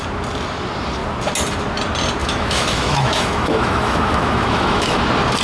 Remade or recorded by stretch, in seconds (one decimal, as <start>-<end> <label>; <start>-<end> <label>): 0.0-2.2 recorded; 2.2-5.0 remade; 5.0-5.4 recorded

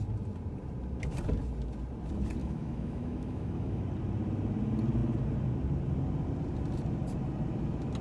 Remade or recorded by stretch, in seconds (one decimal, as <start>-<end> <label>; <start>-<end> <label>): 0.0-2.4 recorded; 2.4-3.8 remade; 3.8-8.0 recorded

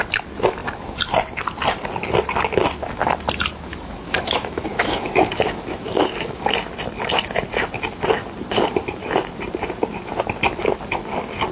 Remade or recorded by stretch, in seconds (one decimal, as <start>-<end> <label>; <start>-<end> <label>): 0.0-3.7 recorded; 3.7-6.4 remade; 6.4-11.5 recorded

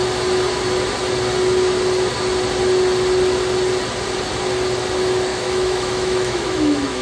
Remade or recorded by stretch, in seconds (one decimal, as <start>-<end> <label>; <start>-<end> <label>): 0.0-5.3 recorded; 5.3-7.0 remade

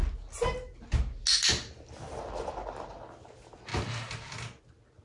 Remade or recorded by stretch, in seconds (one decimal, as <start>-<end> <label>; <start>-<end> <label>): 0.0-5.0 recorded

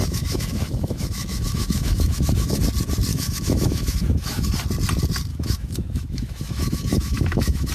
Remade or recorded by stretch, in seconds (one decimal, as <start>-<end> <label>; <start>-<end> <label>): 0.0-2.6 remade; 2.6-3.1 recorded; 3.1-4.5 remade; 4.5-5.3 recorded; 5.3-7.7 remade

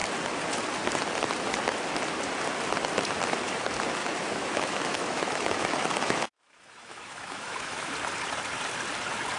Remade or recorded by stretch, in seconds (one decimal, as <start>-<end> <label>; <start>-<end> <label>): 0.0-4.0 recorded; 4.0-7.9 remade; 7.9-9.4 recorded